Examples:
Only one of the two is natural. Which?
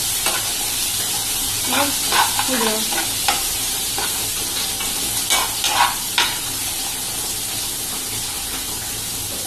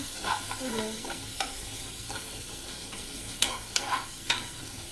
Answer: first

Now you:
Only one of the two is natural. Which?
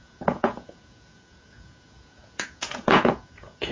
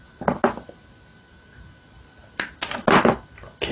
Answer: second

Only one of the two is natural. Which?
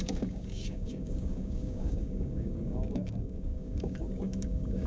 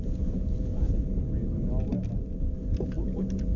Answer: second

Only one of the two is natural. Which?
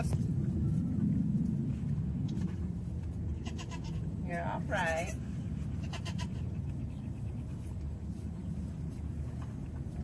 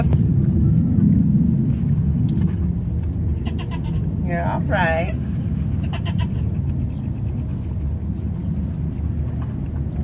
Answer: second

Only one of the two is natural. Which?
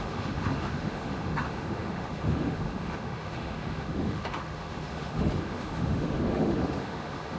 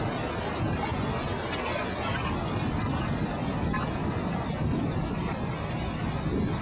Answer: second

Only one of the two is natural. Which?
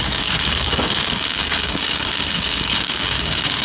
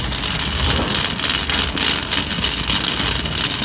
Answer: second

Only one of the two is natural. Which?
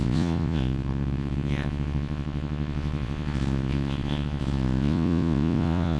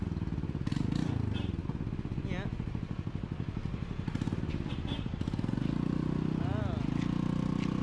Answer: second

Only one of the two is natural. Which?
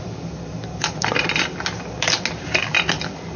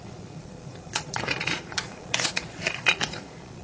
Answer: first